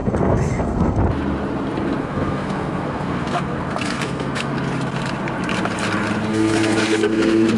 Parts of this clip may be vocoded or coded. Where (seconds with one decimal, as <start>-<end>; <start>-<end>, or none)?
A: 0.0-1.0; 2.0-4.5; 6.3-7.6